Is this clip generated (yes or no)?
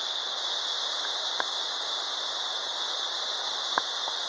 no